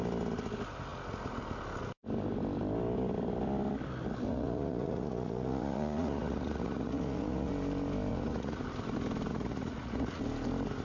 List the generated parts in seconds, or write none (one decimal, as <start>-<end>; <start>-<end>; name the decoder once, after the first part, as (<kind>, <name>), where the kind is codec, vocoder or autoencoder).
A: 4.3-7.5 (vocoder, Vocos); 8.1-8.6; 9.3-10.2

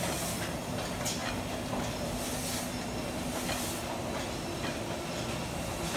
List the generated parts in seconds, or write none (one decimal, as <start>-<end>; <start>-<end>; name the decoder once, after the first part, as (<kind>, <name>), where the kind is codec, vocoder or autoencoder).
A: none

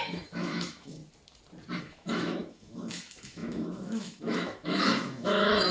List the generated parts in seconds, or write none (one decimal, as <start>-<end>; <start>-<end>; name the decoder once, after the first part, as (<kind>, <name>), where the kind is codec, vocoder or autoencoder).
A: 0.0-1.0 (autoencoder, DAC-VAE); 1.8-5.7

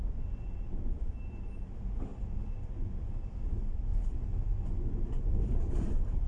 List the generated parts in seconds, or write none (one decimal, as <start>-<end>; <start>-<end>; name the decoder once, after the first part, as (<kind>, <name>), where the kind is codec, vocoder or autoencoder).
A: 3.9-5.3 (vocoder, Vocos)

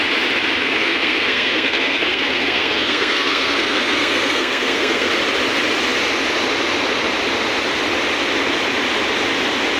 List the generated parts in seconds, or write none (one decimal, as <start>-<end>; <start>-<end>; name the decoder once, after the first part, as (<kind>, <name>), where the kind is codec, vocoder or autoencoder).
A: 0.6-5.1 (codec, SNAC)

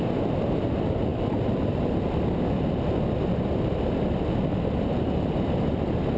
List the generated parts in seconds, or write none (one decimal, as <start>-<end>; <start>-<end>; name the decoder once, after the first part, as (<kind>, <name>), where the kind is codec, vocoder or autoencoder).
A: none

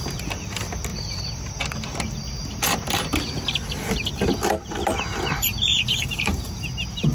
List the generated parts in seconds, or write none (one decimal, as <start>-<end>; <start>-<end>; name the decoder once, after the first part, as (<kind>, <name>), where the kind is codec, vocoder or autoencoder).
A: 5.1-6.6 (vocoder, BigVGAN v2)

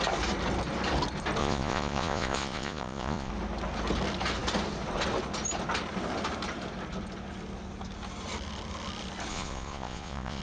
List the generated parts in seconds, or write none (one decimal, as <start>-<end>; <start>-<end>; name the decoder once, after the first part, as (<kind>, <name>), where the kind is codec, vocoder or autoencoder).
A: 1.4-3.3 (vocoder, Vocos); 9.3-10.4